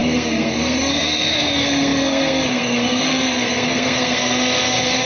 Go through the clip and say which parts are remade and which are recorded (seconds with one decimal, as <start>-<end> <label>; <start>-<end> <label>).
0.0-5.0 remade